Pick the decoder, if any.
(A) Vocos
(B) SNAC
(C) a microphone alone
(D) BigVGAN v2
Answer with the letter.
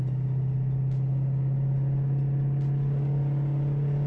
C